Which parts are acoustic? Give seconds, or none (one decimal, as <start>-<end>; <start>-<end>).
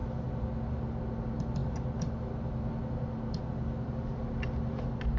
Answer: 0.0-5.2